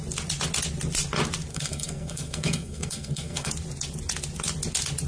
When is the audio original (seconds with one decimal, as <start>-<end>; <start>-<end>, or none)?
0.0-1.5; 3.5-5.1